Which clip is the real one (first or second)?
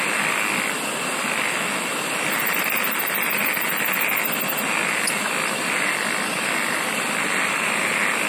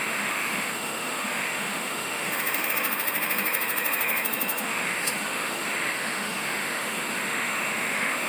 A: first